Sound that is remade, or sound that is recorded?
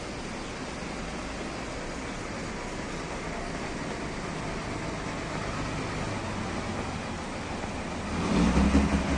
recorded